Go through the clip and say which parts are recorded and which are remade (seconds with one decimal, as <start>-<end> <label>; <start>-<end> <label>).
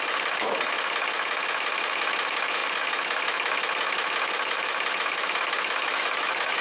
0.0-6.6 remade